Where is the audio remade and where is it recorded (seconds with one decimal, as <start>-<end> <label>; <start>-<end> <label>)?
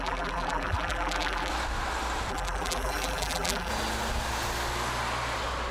0.0-1.5 remade; 1.5-2.3 recorded; 2.3-3.7 remade; 3.7-5.7 recorded